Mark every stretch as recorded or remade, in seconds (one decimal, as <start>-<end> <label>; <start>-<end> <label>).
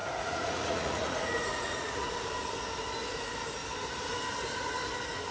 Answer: 0.0-2.1 remade; 2.1-5.3 recorded